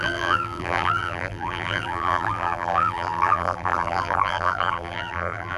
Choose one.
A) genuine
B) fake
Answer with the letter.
B